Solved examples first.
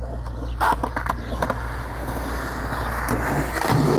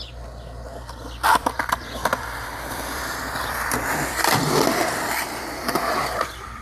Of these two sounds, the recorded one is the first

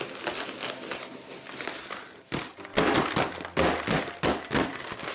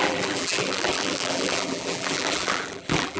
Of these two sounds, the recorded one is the first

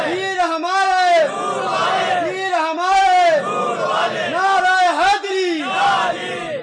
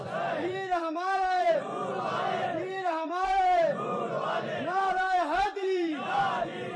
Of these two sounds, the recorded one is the first